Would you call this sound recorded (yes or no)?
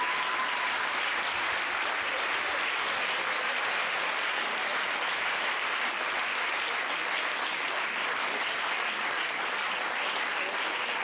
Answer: yes